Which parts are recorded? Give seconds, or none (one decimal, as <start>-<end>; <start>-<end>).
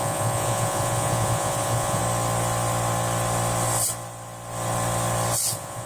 2.0-5.5